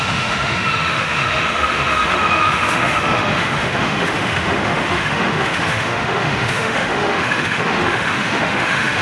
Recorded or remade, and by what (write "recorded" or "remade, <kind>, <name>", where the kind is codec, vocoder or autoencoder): remade, autoencoder, DAC-VAE